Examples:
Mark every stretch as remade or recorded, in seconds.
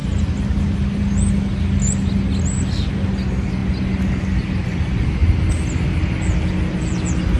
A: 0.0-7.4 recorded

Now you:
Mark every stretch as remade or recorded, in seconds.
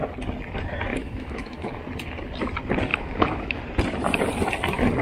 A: 0.0-0.9 recorded; 0.9-1.8 remade; 1.8-2.9 recorded; 2.9-3.6 remade; 3.6-5.0 recorded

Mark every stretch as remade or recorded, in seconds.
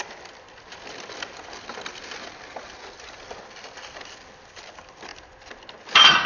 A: 0.0-6.3 recorded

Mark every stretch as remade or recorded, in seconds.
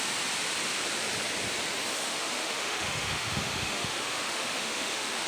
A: 0.0-1.9 recorded; 1.9-5.3 remade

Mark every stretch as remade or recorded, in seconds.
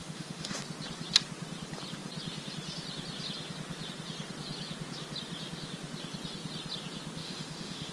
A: 0.0-0.6 remade; 0.6-7.2 recorded; 7.2-7.9 remade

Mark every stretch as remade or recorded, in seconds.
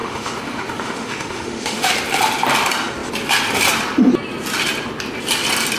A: 0.0-1.9 remade; 1.9-5.8 recorded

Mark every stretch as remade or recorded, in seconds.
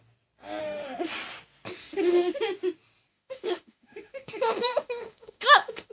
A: 0.0-0.6 recorded; 0.6-1.1 remade; 1.1-1.8 recorded; 1.8-2.4 remade; 2.4-3.1 recorded; 3.1-5.9 remade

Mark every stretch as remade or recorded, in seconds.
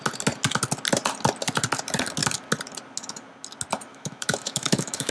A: 0.0-3.9 recorded; 3.9-5.1 remade